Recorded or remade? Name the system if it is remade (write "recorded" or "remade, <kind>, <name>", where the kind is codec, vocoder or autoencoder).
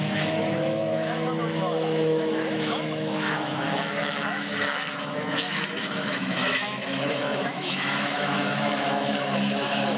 remade, autoencoder, DAC-VAE